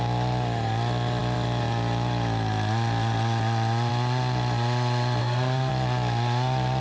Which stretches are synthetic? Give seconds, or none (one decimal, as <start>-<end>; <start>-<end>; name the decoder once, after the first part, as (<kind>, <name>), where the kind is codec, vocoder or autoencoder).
5.2-5.7 (codec, SNAC)